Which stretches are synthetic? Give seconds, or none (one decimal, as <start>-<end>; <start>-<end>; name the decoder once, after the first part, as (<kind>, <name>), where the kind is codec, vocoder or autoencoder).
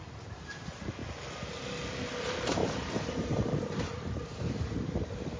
2.6-4.9 (vocoder, BigVGAN v2)